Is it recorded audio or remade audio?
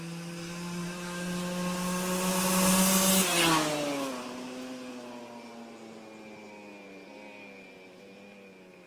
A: recorded